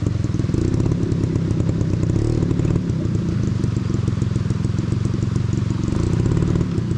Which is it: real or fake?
real